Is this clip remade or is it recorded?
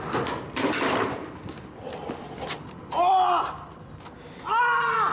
recorded